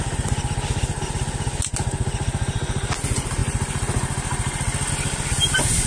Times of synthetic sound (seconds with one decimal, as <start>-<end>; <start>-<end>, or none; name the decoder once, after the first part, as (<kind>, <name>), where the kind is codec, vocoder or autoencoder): none

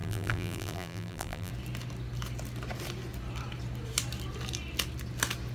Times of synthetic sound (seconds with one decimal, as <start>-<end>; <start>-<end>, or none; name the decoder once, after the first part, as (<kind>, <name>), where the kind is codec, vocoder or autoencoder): 0.0-1.5 (vocoder, BigVGAN v2)